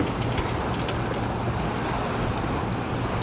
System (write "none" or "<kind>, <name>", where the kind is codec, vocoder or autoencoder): none